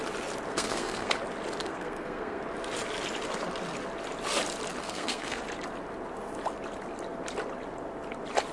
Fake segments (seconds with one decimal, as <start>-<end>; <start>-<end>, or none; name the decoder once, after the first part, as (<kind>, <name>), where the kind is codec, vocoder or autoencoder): 0.5-1.1 (codec, SNAC); 1.6-2.4; 4.8-5.4